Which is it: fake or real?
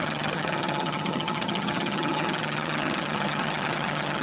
fake